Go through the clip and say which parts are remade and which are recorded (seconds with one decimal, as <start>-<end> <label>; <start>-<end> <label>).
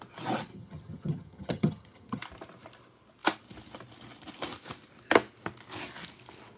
0.0-0.5 recorded; 0.5-2.2 remade; 2.2-6.6 recorded